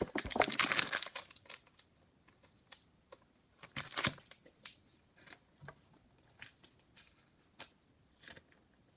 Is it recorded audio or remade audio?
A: recorded